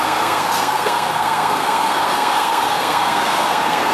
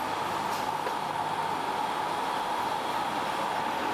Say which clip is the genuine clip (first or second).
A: second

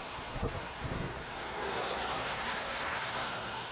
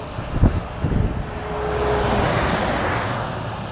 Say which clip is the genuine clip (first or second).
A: second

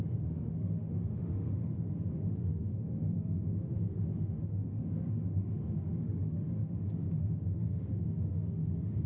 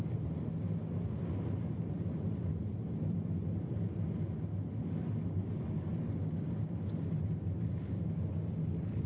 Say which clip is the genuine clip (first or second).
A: second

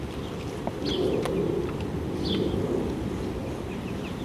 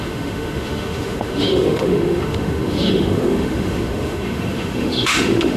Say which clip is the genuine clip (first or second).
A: first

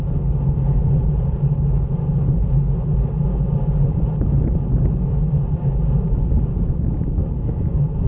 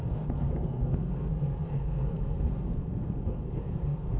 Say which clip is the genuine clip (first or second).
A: first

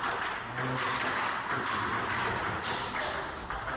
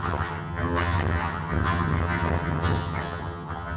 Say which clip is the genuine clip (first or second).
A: first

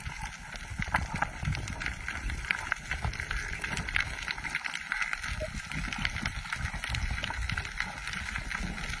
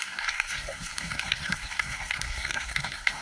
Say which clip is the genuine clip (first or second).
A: first